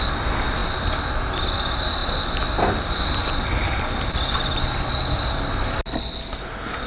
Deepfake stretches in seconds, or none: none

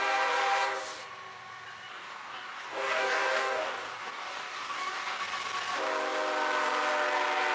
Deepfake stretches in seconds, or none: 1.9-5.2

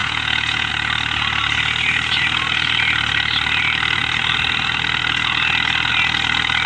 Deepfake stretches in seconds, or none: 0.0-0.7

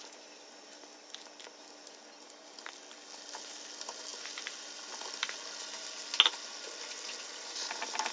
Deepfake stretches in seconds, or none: none

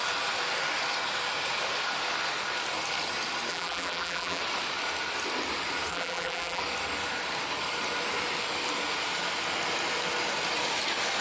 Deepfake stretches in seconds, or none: 3.5-4.4; 5.9-6.6

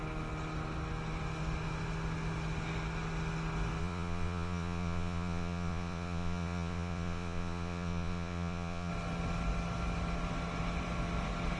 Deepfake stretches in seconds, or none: 3.8-8.9

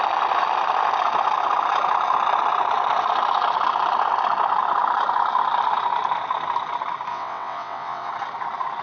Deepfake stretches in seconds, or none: 7.1-8.1

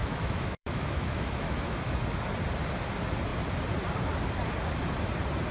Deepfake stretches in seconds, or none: 0.0-2.0